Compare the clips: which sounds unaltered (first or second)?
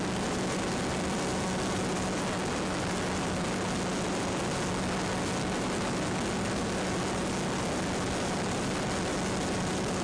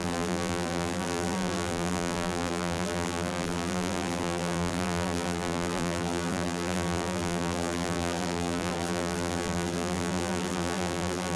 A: first